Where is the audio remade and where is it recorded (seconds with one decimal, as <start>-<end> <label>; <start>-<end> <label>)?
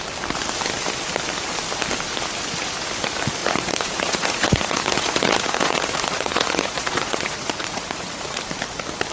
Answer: 0.0-3.4 recorded; 3.4-8.4 remade; 8.4-9.1 recorded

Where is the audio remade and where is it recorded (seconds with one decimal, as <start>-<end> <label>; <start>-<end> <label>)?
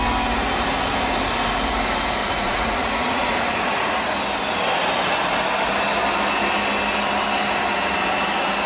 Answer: 0.0-2.2 recorded; 2.2-4.2 remade; 4.2-8.7 recorded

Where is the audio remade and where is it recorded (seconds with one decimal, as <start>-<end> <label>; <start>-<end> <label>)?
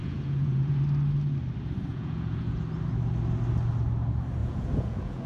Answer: 0.0-0.8 remade; 0.8-1.9 recorded; 1.9-2.6 remade; 2.6-4.4 recorded; 4.4-5.3 remade